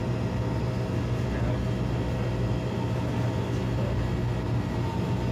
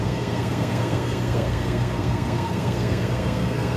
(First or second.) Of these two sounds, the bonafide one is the first